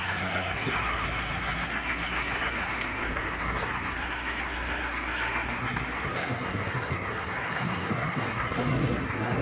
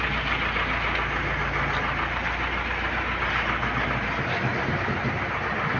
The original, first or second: second